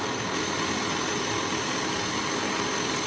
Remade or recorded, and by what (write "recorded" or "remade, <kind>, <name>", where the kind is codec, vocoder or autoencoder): recorded